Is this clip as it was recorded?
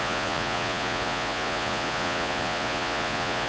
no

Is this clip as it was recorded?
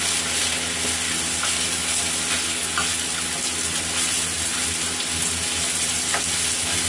yes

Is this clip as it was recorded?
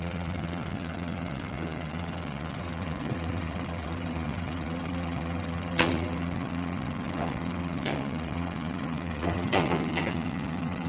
no